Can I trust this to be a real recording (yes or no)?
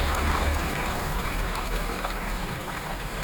no